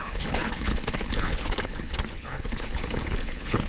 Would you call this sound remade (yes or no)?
yes